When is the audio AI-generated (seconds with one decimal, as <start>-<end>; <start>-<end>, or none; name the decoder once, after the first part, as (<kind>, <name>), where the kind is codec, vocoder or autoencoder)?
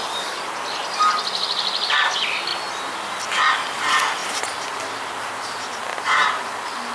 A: none